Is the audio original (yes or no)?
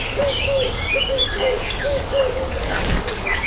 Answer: no